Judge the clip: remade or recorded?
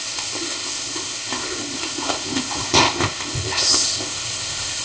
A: remade